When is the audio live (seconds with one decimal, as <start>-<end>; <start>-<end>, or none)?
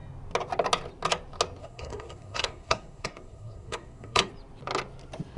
0.0-1.6; 4.3-5.4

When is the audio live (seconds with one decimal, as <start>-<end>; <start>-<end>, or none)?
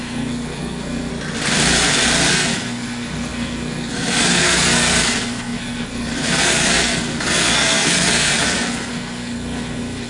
1.1-2.3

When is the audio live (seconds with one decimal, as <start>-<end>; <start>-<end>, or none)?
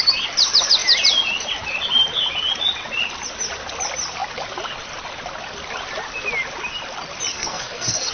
0.0-7.3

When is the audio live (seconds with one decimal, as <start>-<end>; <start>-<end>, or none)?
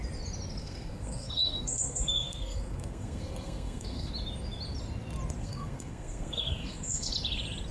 0.0-0.6; 4.1-5.4; 7.1-7.7